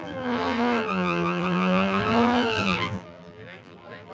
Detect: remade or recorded remade